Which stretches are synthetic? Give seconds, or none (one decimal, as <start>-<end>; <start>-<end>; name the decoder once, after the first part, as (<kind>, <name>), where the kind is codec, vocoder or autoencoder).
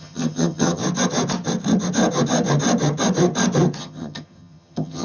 0.0-0.8 (vocoder, HiFi-GAN); 3.8-5.0